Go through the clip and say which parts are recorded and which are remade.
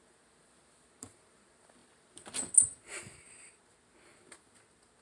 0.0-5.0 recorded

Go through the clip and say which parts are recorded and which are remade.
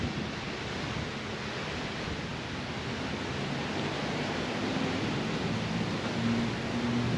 0.0-7.2 recorded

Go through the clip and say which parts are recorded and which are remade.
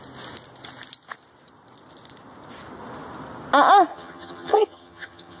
0.0-3.9 recorded; 3.9-5.4 remade